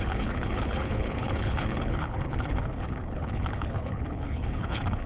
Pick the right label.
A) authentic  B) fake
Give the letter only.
B